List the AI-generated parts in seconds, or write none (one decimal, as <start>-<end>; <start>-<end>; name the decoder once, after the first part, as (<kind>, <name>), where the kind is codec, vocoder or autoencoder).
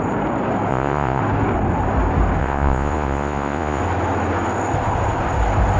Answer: 0.7-1.2 (vocoder, Vocos); 2.4-3.8